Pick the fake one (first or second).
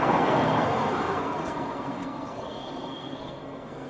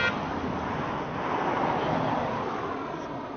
first